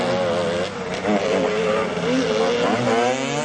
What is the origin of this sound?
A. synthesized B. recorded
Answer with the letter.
B